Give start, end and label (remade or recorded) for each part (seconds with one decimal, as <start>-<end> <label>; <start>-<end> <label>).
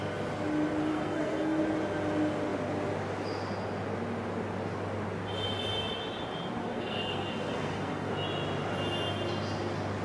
0.0-0.9 recorded; 0.9-1.6 remade; 1.6-6.6 recorded; 6.6-8.1 remade; 8.1-10.0 recorded